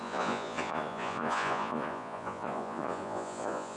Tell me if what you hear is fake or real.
fake